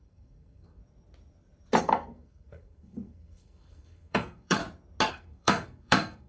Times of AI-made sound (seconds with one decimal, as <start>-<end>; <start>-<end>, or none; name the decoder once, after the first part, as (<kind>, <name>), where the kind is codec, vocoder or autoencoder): 0.0-0.8 (codec, SNAC); 1.8-4.6; 5.1-6.3

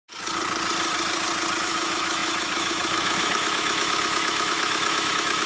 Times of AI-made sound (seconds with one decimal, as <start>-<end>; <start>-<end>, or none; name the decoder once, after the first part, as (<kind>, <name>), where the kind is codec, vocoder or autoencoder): 1.6-5.5 (autoencoder, DAC-VAE)